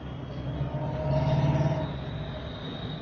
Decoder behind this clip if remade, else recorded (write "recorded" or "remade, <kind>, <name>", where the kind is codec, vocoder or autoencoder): recorded